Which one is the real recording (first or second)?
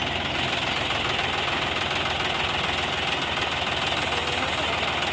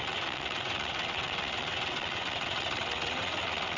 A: first